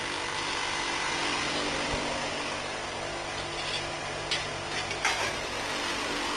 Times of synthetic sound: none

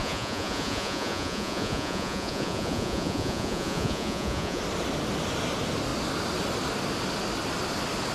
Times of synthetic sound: 0.0-4.6 (vocoder, Vocos)

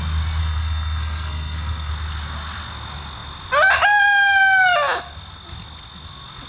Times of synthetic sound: 0.4-1.9 (codec, SNAC)

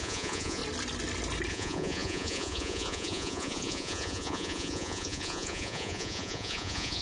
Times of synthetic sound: 0.0-0.6 (vocoder, Vocos); 1.5-7.0

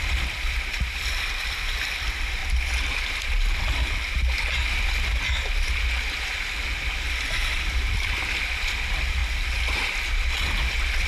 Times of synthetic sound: 0.0-2.4 (vocoder, BigVGAN v2); 7.1-9.2